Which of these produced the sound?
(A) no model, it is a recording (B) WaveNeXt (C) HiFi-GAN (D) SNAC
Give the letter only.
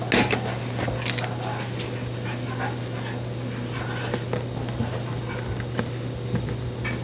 A